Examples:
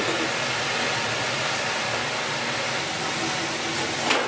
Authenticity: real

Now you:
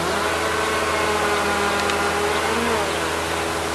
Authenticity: real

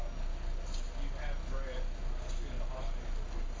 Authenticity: real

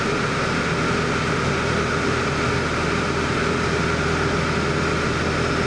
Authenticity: real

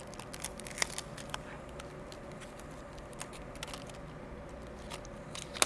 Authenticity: real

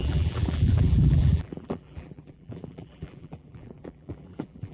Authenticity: fake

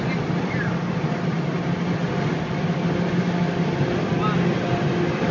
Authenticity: real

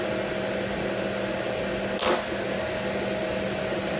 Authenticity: real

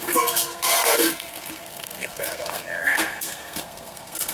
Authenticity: fake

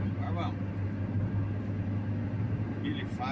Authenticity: real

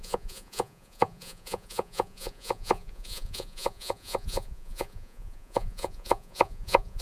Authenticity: fake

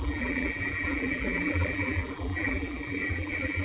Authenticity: fake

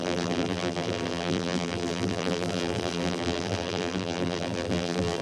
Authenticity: fake